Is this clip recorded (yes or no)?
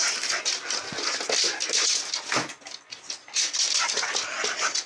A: yes